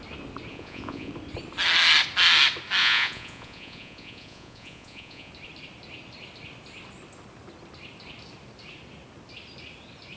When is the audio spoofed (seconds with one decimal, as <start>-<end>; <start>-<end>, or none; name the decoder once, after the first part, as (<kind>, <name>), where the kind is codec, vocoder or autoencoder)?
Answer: 0.5-1.1 (vocoder, Vocos); 2.8-5.3